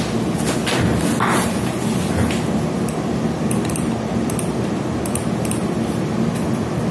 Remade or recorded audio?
recorded